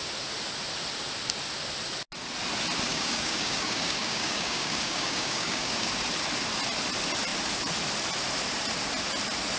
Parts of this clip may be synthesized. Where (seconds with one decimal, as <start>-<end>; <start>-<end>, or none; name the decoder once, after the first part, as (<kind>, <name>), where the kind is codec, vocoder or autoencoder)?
2.9-5.9 (codec, DAC)